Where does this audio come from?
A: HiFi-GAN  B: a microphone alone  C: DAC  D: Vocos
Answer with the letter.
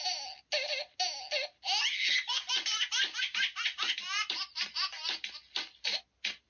B